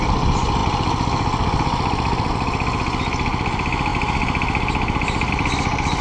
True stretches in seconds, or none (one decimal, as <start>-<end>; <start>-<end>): 0.0-6.0